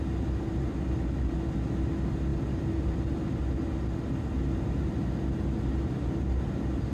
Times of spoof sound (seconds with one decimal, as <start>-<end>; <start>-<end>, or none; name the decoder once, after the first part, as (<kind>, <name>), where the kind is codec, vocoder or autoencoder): none